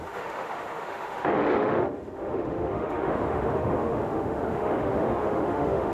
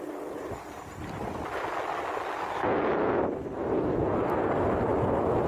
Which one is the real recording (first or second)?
second